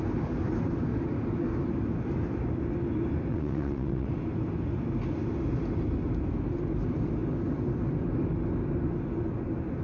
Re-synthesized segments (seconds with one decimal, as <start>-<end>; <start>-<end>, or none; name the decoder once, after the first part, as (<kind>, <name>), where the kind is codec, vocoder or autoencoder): 3.3-4.1 (vocoder, WaveNeXt)